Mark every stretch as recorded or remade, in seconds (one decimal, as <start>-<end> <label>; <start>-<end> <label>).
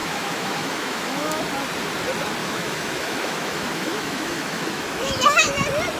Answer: 0.0-1.4 remade; 1.4-2.4 recorded; 2.4-5.5 remade; 5.5-6.0 recorded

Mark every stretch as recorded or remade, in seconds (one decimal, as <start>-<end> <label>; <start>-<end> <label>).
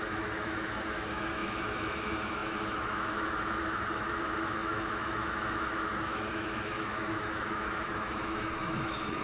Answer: 0.0-9.2 remade